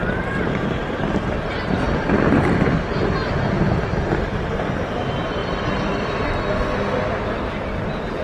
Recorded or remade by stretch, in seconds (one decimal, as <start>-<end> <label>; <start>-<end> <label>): 0.0-1.2 remade; 1.2-5.4 recorded; 5.4-6.2 remade; 6.2-8.2 recorded